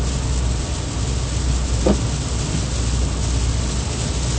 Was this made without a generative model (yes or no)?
yes